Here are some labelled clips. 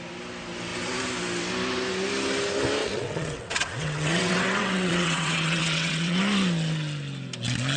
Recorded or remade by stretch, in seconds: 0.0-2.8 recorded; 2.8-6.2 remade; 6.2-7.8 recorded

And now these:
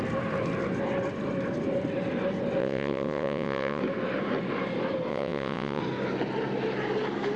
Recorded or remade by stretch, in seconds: 0.0-2.6 recorded; 2.6-3.8 remade; 3.8-5.1 recorded; 5.1-5.8 remade; 5.8-7.4 recorded

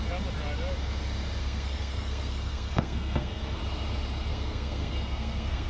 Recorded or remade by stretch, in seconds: 0.0-1.4 recorded; 1.4-3.6 remade; 3.6-4.3 recorded; 4.3-5.7 remade